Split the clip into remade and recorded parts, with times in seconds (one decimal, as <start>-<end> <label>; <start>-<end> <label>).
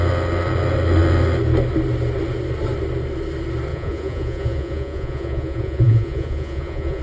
0.0-3.7 recorded; 3.7-7.0 remade